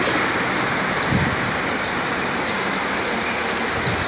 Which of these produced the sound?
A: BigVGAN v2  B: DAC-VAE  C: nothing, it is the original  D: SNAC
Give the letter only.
C